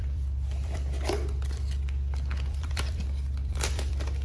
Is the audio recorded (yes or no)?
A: no